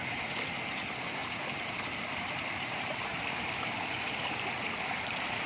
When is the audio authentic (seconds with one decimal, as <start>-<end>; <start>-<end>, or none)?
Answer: 0.0-1.2; 4.5-5.5